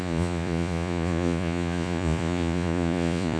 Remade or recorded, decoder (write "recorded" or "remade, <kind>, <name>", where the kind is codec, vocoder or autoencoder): remade, vocoder, Vocos